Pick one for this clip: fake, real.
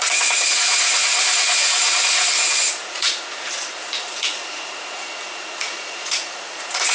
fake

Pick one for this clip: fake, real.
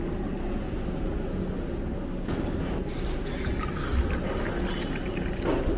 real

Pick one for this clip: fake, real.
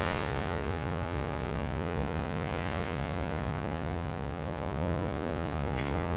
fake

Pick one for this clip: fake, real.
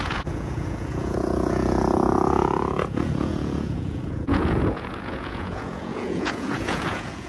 fake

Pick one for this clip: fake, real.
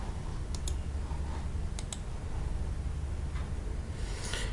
real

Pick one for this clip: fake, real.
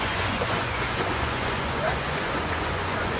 fake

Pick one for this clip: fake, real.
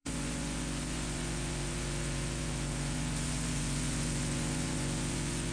fake